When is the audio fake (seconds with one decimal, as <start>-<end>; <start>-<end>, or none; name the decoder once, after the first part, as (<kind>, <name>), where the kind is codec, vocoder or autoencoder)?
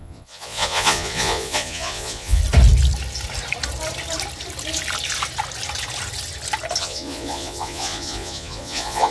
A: 0.0-2.4 (vocoder, Vocos); 6.8-9.1